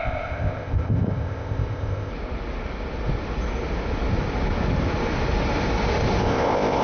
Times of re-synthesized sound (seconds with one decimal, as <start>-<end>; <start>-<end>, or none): 0.0-2.1; 6.2-6.8